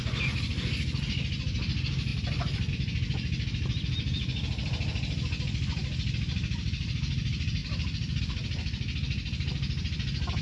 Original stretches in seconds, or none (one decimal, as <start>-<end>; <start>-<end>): 0.0-10.4